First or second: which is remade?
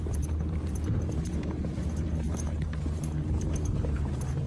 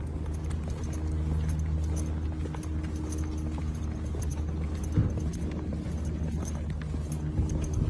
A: first